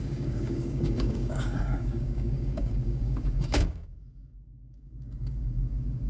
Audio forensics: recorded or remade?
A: remade